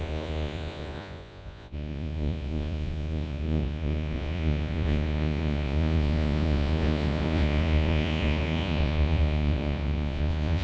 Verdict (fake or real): fake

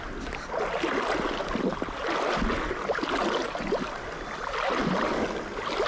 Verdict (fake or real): real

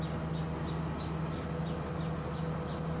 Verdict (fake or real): real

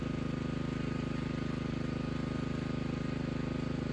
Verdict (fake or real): real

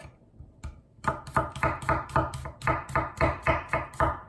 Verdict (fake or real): real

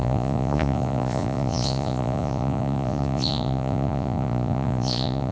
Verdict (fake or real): fake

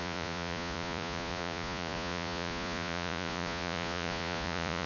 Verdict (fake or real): fake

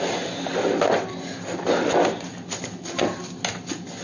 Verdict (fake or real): real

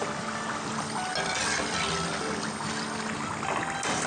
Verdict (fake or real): real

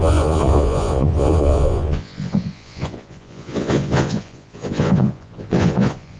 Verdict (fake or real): fake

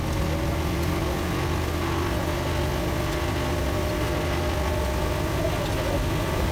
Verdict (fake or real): real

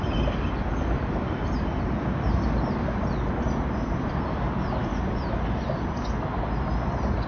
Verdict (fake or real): real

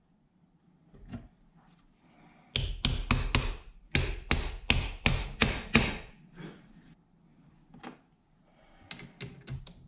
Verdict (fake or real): real